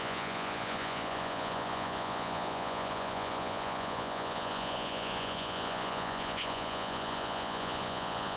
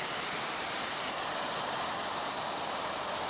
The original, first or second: second